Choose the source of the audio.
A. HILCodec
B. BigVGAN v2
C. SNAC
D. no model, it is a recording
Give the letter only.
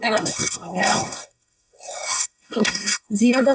C